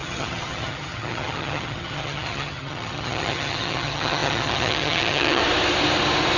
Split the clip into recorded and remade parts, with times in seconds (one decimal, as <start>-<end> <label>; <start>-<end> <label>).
0.0-5.4 remade; 5.4-6.4 recorded